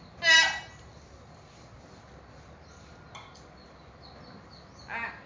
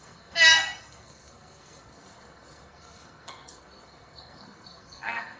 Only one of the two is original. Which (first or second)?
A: first